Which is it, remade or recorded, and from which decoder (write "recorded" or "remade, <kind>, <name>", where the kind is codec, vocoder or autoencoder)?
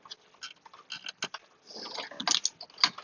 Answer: recorded